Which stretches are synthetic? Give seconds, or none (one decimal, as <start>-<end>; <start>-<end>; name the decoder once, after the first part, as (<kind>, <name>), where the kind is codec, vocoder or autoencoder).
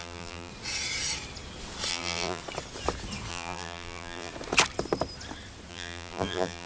0.0-0.5 (vocoder, BigVGAN v2); 1.9-2.4; 3.3-4.3; 5.7-6.7